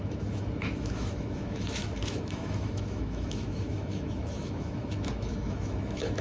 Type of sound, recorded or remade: remade